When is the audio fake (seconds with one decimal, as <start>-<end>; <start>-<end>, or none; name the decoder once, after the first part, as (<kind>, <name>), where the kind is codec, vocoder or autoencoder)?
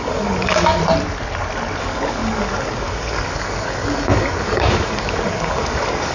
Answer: 0.0-0.8 (codec, DAC); 1.8-6.1